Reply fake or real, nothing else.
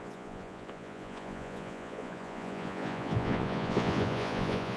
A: fake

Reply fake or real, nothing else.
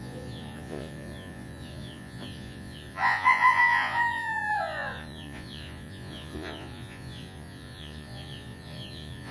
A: fake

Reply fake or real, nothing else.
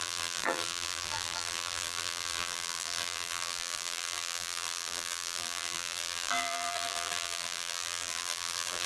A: fake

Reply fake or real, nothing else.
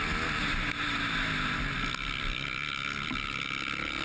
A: real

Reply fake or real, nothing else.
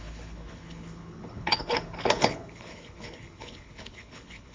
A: fake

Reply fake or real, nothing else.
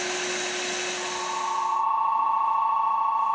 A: real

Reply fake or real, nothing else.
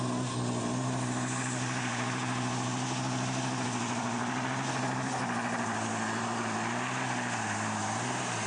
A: real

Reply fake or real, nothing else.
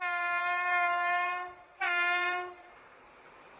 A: fake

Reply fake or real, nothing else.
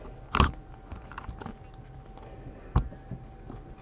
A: real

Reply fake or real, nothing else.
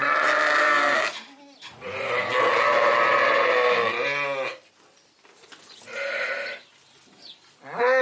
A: real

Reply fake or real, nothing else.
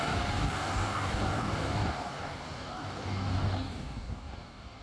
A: fake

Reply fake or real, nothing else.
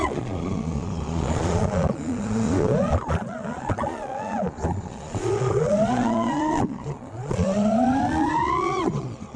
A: fake